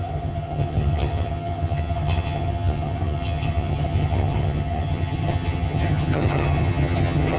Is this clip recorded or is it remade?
remade